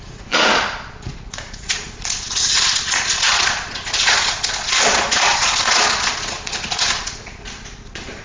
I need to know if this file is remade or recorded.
remade